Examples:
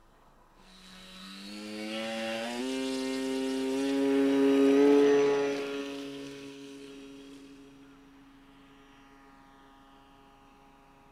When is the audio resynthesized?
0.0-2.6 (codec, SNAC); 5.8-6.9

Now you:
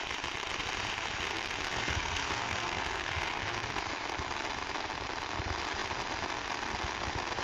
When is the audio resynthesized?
1.3-3.8 (codec, SNAC)

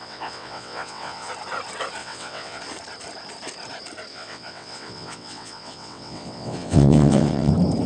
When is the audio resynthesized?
0.0-1.3 (vocoder, WaveNeXt); 2.0-2.6; 4.1-7.5

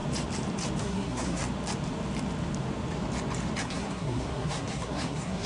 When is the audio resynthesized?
0.8-1.4 (codec, SNAC); 3.6-5.5

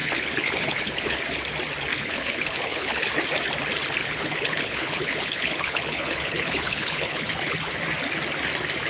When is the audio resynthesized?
0.0-1.2 (codec, HILCodec); 1.9-3.1; 4.0-7.7

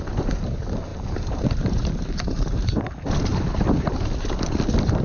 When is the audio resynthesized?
0.9-2.8 (vocoder, BigVGAN v2)